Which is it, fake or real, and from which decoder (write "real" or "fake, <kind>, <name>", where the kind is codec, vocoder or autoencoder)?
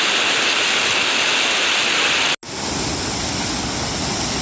real